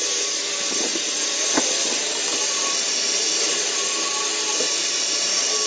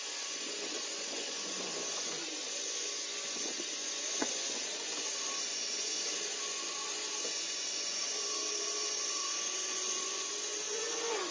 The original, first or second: first